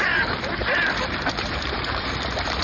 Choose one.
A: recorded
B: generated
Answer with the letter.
B